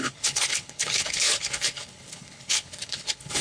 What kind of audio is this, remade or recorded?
remade